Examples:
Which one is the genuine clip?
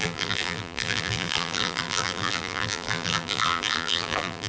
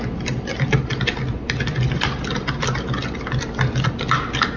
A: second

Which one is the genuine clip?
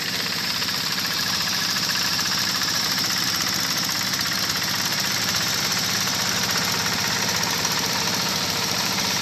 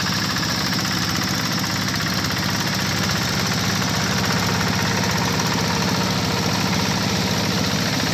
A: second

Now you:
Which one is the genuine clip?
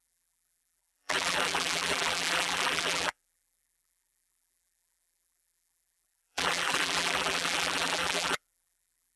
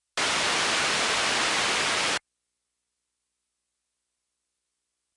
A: second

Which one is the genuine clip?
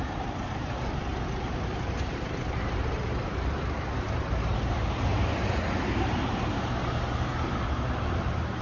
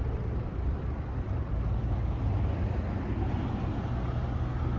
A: second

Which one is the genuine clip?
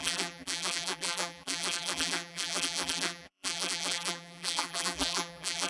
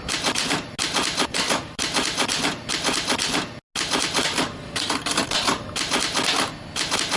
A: second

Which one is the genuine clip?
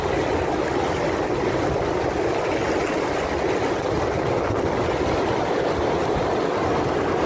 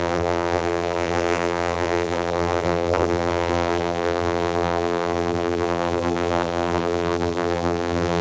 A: first